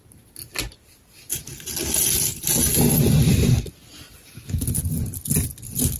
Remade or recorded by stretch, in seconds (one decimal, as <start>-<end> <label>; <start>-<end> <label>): 0.0-6.0 recorded